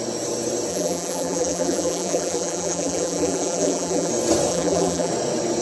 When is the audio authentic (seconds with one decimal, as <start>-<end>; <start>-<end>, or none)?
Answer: 0.0-0.7; 4.1-4.5; 5.1-5.6